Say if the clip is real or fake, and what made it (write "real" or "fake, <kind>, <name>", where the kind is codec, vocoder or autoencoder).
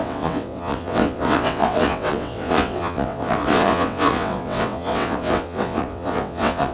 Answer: fake, vocoder, WaveNeXt